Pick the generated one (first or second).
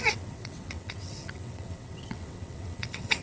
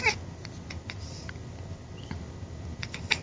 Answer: first